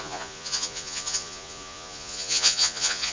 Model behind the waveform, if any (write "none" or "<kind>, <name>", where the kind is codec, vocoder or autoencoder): vocoder, Vocos